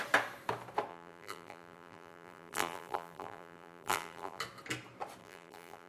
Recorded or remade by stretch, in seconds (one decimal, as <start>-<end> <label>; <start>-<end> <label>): 0.0-0.9 recorded; 0.9-4.4 remade; 4.4-5.2 recorded; 5.2-5.9 remade